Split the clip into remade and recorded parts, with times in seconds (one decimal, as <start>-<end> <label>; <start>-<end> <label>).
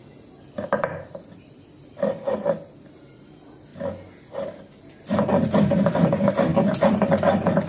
0.0-7.7 recorded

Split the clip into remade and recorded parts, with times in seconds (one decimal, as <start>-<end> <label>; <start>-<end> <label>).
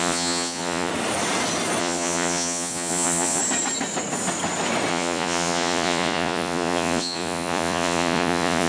0.0-0.9 remade; 0.9-1.8 recorded; 1.8-3.4 remade; 3.4-4.9 recorded; 4.9-8.7 remade